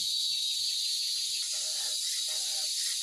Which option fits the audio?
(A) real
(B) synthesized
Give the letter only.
A